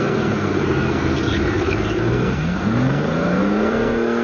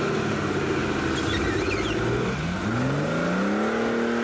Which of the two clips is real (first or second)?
second